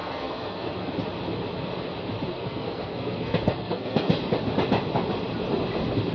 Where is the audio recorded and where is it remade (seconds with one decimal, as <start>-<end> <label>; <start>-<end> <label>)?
0.0-0.9 remade; 0.9-2.3 recorded; 2.3-4.1 remade; 4.1-6.1 recorded